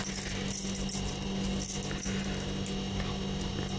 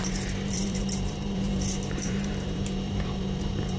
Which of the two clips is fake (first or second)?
second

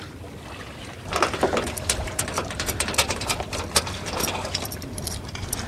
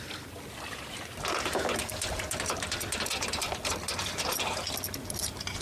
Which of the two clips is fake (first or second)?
first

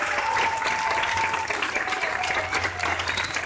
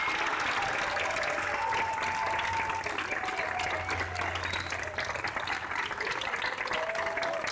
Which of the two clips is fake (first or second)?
first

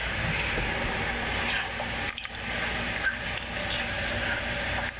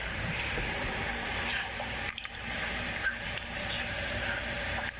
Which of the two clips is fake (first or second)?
second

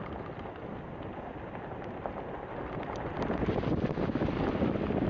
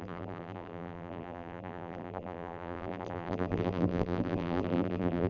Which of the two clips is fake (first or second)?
second